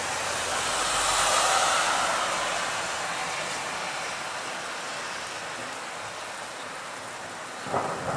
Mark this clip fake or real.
real